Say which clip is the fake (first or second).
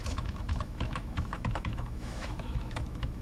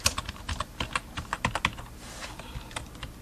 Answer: first